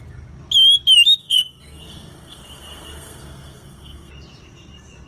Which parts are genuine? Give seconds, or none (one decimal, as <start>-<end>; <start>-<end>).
0.0-1.2; 4.1-5.1